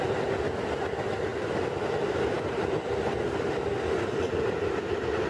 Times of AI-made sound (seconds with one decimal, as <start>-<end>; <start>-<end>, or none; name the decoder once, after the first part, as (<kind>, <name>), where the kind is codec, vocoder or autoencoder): 1.3-3.8 (vocoder, BigVGAN v2)